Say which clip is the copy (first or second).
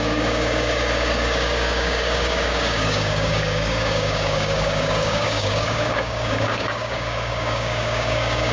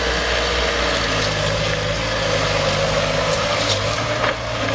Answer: first